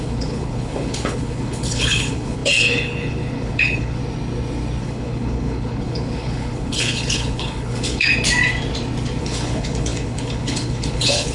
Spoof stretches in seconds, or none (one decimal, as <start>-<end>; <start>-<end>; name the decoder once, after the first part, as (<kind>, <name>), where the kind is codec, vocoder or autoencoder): 0.0-4.0 (codec, HILCodec); 4.8-8.1; 9.2-11.3